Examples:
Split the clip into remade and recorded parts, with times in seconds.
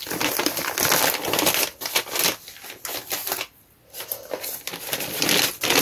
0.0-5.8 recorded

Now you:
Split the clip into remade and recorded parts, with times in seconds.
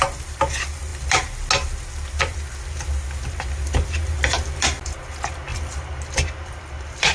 0.0-5.5 recorded; 5.5-6.0 remade; 6.0-7.1 recorded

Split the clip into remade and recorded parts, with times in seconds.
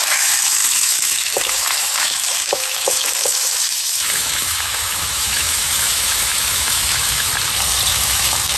0.0-7.3 remade; 7.3-7.9 recorded; 7.9-8.6 remade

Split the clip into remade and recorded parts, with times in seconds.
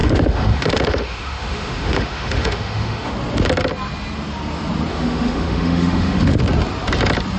0.0-3.1 remade; 3.1-4.9 recorded; 4.9-6.4 remade; 6.4-7.4 recorded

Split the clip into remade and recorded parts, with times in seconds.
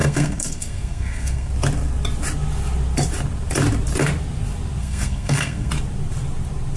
0.0-1.5 remade; 1.5-4.8 recorded; 4.8-5.7 remade; 5.7-6.8 recorded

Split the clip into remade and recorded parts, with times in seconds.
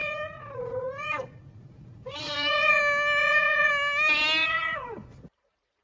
0.0-2.8 remade; 2.8-3.2 recorded; 3.2-3.7 remade; 3.7-4.4 recorded; 4.4-5.8 remade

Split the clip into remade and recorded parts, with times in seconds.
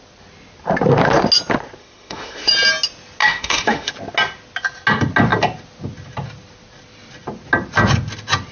0.0-1.8 recorded; 1.8-2.5 remade; 2.5-3.2 recorded; 3.2-3.9 remade; 3.9-8.5 recorded